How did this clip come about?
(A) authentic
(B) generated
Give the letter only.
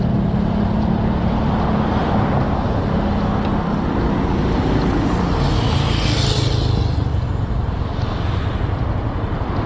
A